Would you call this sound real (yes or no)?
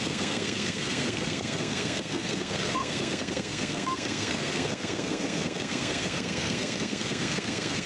no